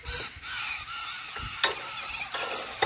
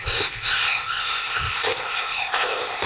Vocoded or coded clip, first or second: second